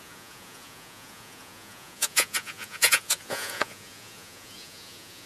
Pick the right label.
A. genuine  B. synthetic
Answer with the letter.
B